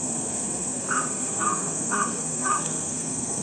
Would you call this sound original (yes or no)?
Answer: no